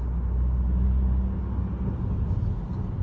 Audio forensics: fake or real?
real